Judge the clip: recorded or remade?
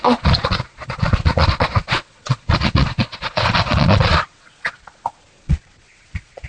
remade